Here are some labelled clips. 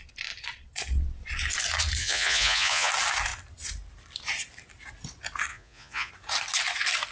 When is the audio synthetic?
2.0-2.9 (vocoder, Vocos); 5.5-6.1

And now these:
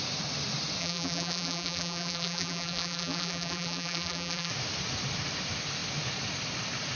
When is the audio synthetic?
0.8-4.5 (vocoder, BigVGAN v2)